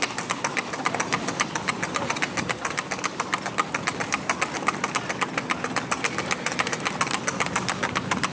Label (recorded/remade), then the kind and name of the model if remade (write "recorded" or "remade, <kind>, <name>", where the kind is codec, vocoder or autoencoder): recorded